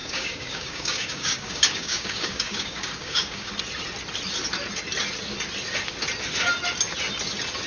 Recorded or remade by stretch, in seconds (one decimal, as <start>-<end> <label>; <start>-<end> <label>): 0.0-3.5 remade; 3.5-7.7 recorded